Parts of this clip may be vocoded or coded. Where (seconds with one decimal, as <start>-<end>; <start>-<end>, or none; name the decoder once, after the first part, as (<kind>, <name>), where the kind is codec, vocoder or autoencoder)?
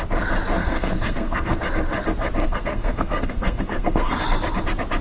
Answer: 0.6-1.6 (codec, SNAC); 2.4-4.2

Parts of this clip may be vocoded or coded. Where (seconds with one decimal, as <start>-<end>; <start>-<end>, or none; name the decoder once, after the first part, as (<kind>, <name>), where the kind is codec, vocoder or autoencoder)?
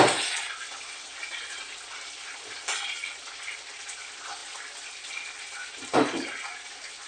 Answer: none